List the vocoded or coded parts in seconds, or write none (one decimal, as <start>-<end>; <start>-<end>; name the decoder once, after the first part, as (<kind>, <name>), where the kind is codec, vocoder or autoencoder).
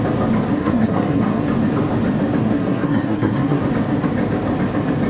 0.6-1.4 (codec, SNAC); 2.4-3.6